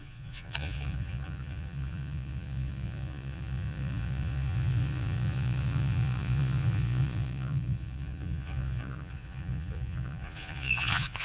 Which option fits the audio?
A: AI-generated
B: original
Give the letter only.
A